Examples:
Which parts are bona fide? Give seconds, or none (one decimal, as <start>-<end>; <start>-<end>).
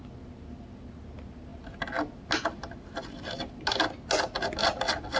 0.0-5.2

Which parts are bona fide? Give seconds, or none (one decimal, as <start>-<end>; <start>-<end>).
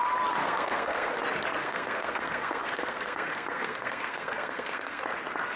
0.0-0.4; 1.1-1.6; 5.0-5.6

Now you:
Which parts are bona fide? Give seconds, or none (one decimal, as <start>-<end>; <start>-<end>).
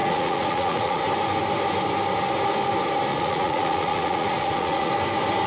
1.0-3.1; 4.9-5.5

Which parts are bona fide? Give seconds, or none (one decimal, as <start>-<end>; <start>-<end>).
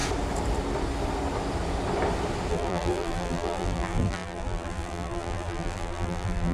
0.0-2.5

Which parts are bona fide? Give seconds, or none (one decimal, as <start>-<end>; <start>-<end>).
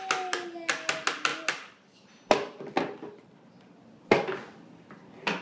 0.0-5.4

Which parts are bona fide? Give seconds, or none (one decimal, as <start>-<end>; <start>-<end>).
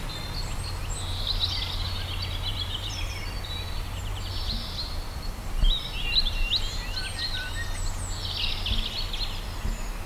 0.0-2.5; 6.5-10.1